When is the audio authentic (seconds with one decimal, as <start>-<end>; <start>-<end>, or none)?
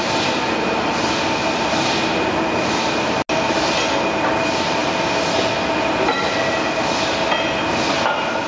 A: 0.0-8.5